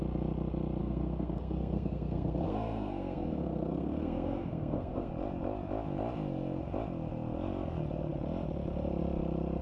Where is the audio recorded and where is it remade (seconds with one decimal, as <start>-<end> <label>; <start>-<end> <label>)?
0.0-0.8 recorded; 0.8-5.1 remade; 5.1-9.6 recorded